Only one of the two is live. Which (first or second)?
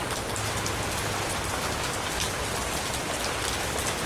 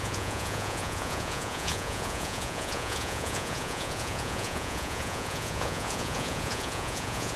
first